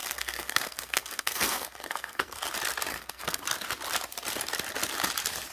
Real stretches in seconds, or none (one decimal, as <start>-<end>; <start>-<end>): 2.4-2.9; 3.4-5.5